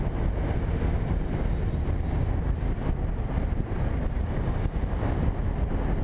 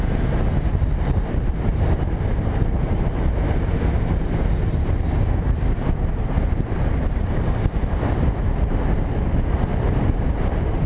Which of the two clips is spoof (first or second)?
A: second